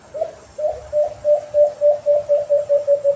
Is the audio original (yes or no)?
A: yes